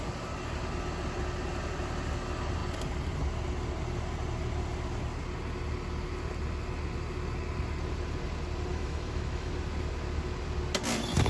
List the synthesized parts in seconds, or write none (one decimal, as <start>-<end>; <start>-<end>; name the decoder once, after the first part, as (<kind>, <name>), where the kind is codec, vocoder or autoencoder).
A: 8.7-9.5 (autoencoder, DAC-VAE)